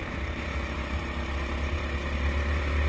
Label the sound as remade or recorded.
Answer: recorded